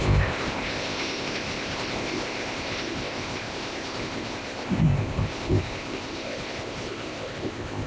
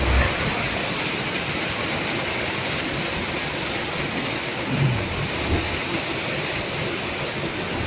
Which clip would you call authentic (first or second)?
second